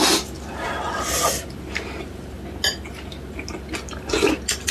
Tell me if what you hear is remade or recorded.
recorded